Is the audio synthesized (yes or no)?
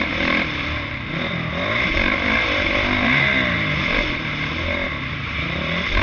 no